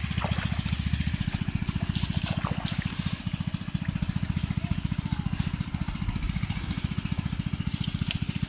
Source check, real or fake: real